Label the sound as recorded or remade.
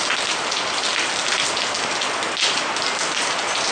recorded